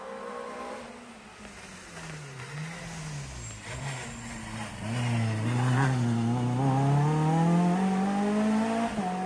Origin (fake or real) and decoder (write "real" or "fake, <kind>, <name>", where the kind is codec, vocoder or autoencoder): real